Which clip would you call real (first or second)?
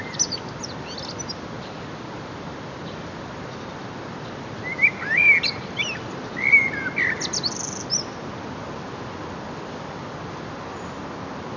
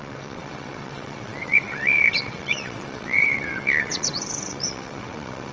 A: first